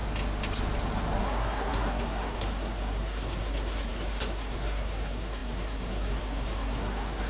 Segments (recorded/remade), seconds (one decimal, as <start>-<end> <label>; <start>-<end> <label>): 0.0-1.2 recorded; 1.2-7.3 remade